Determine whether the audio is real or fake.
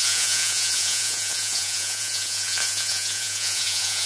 fake